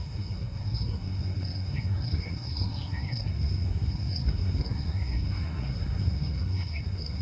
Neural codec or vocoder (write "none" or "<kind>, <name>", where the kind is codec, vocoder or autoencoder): codec, SNAC